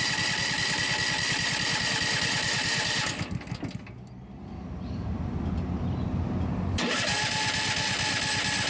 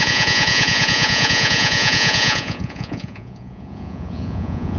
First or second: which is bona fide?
first